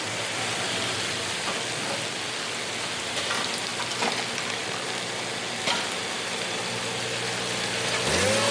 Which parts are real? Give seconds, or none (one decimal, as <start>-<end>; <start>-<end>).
0.0-8.5